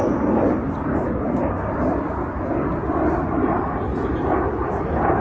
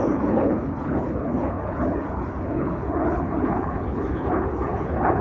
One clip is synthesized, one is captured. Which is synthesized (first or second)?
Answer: second